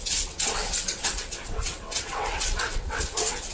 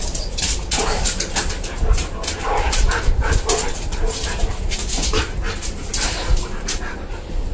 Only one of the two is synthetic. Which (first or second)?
first